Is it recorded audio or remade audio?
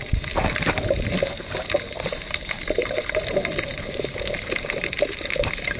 remade